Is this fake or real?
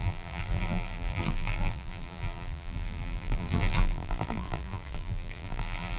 fake